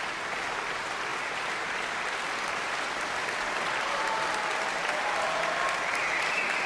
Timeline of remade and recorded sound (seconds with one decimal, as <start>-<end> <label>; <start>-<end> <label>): 0.0-6.7 recorded